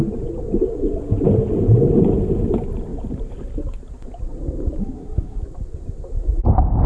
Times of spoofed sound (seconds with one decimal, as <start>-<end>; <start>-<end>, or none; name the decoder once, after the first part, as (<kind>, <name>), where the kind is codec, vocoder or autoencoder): 4.8-5.4 (codec, SNAC)

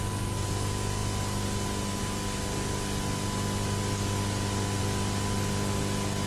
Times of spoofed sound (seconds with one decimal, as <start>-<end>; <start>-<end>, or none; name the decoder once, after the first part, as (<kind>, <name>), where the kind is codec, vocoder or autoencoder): none

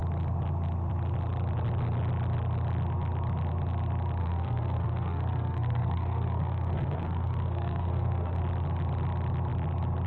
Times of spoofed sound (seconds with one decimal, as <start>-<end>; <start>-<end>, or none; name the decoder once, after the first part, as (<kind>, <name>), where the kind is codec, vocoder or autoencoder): 4.2-8.4 (codec, SNAC)

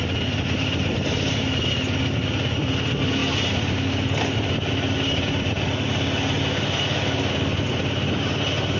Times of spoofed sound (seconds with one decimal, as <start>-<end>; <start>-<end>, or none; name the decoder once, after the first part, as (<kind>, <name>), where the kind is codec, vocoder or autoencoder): none

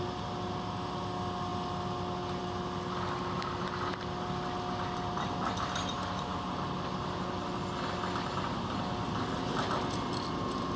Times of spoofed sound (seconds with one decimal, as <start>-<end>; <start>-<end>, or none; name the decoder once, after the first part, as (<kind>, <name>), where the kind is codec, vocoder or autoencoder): none